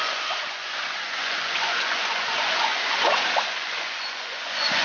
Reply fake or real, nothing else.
fake